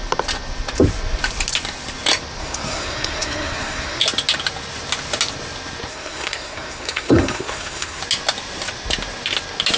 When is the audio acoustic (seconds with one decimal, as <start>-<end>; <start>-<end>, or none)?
0.0-2.4; 4.0-5.9; 8.0-9.8